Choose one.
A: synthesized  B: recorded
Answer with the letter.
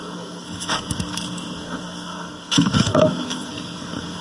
A